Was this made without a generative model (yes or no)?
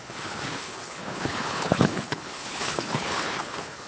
no